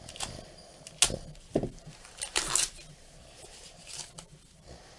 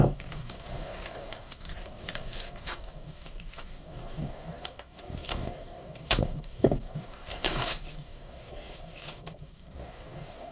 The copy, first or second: second